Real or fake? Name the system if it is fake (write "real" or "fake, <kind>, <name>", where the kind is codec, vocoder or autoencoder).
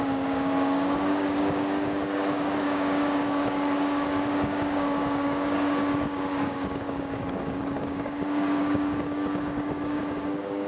fake, codec, DAC